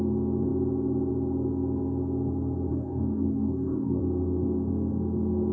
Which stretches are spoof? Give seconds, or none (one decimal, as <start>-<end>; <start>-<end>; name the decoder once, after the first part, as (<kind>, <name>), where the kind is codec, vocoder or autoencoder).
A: 2.7-4.0 (codec, DAC)